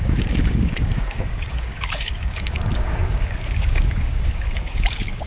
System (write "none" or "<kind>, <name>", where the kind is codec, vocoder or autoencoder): codec, DAC